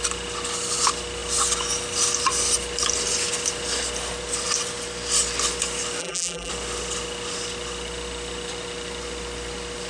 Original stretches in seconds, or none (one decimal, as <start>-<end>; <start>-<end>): 0.0-6.0; 6.5-9.9